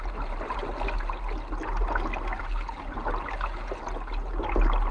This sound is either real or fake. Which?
real